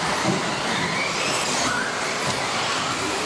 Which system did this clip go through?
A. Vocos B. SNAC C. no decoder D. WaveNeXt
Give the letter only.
C